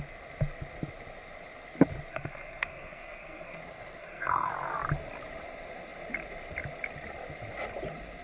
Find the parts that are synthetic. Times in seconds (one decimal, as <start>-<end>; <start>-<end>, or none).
2.1-3.6; 4.0-4.5